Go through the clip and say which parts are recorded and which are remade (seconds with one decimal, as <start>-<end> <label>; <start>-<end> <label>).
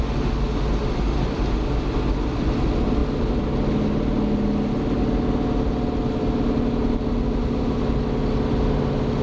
0.0-9.2 recorded